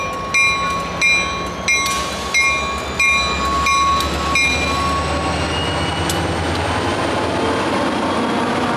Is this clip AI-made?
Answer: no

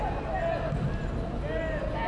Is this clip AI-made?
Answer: no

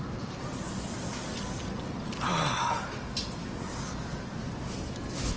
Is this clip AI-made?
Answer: no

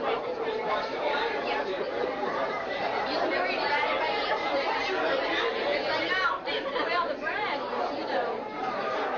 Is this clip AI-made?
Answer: yes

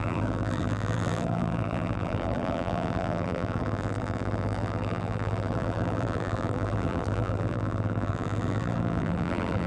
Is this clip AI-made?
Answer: yes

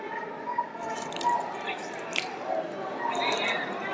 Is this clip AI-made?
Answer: no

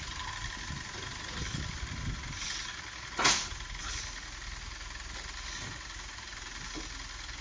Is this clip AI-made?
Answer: no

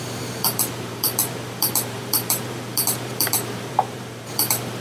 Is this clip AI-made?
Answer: yes